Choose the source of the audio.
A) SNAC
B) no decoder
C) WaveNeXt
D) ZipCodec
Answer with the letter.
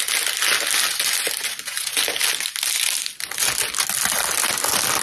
B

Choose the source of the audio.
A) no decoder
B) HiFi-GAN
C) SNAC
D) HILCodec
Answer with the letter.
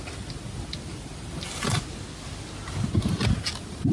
A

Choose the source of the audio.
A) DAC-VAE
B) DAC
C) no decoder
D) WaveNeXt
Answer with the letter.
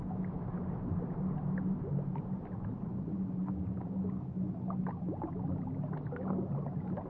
C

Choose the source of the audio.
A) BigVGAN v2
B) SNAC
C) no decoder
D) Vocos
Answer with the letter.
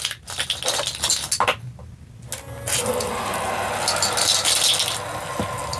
C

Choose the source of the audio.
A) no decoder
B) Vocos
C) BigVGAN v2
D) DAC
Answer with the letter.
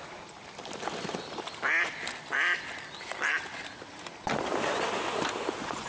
A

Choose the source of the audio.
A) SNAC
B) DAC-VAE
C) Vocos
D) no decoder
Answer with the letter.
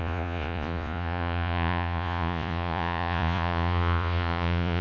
C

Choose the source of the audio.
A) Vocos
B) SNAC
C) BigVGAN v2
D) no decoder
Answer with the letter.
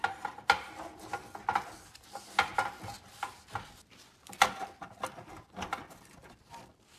D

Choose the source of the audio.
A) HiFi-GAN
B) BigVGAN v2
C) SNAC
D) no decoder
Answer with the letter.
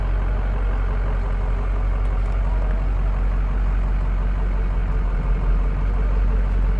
D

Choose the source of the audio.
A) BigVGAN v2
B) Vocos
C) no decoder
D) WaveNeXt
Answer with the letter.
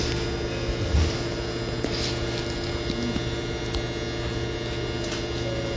C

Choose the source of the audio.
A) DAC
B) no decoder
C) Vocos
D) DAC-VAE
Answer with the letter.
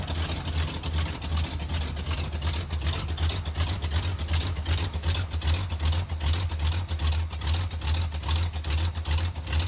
B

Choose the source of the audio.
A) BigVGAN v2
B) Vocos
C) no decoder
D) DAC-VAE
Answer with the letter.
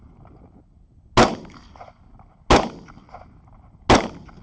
C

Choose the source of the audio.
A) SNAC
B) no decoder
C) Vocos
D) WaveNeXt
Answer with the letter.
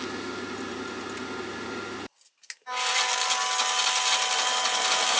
B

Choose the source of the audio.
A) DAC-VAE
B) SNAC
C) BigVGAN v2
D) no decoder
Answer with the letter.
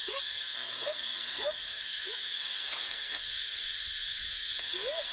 B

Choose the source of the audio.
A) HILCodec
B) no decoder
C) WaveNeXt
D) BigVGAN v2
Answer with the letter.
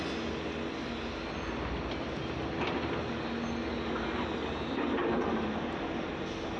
B